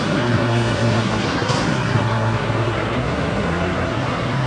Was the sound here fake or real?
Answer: fake